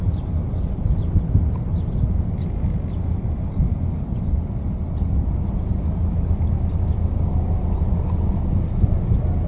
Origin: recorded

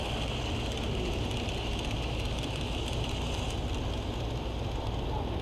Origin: recorded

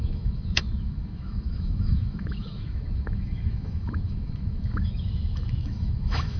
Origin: remade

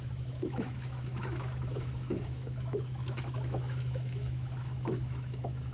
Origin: remade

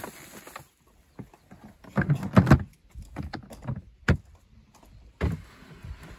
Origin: recorded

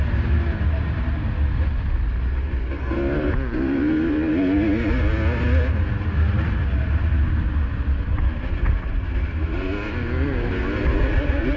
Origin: recorded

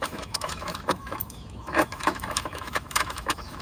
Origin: remade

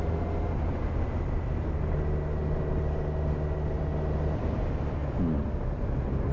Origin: recorded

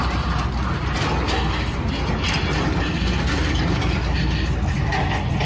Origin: recorded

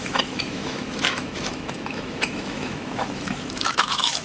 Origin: remade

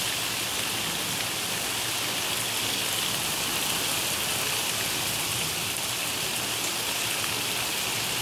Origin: recorded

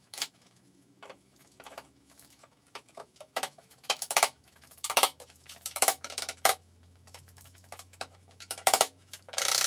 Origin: remade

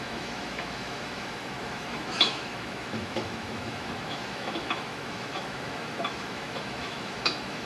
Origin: remade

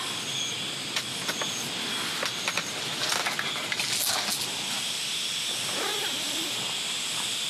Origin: recorded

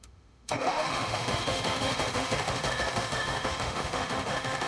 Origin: remade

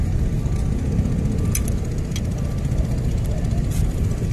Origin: recorded